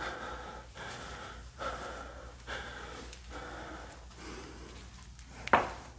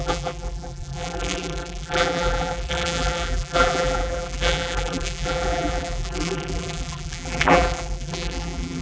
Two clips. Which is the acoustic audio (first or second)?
first